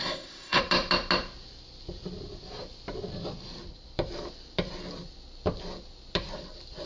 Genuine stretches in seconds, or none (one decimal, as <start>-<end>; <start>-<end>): 0.6-6.9